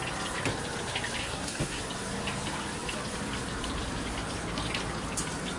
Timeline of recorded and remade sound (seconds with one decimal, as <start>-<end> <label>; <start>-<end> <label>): 0.0-1.2 recorded; 1.2-1.8 remade; 1.8-5.6 recorded